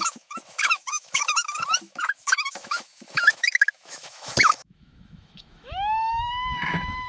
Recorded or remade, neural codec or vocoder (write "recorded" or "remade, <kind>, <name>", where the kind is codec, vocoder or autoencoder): remade, autoencoder, DAC-VAE